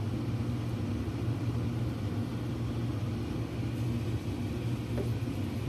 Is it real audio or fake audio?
real